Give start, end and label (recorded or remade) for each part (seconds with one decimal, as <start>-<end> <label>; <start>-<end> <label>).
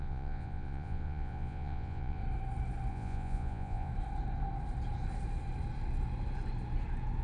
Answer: 0.0-2.2 remade; 2.2-2.9 recorded; 2.9-3.9 remade; 3.9-7.2 recorded